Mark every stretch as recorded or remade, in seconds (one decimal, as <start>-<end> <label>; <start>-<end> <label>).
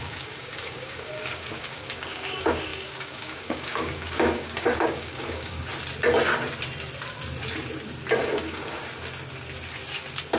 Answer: 0.0-5.7 remade; 5.7-8.2 recorded; 8.2-8.8 remade; 8.8-10.4 recorded